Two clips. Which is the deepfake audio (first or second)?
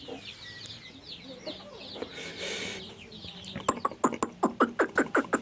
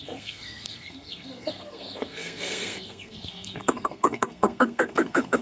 second